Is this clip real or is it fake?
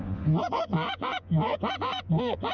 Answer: fake